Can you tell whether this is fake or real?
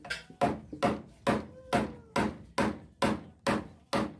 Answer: real